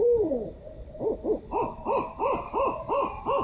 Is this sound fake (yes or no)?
yes